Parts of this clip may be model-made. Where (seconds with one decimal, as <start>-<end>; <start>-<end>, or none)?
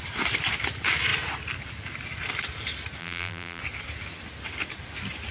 3.0-3.6